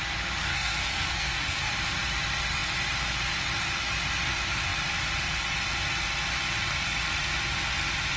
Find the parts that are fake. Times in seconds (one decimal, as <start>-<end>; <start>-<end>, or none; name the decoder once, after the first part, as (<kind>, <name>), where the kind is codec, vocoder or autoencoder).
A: 0.4-1.7 (codec, SNAC)